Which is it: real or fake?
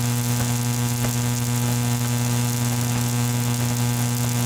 real